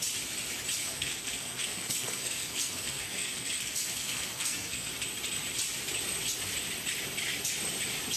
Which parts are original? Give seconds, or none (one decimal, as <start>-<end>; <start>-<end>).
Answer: 0.0-0.8; 4.9-8.2